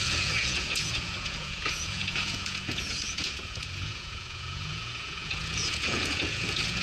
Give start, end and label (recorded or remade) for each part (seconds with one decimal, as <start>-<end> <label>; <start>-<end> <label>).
0.0-6.8 remade